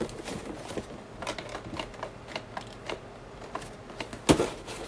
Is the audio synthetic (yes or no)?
no